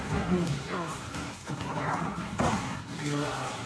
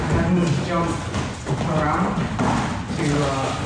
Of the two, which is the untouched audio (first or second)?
second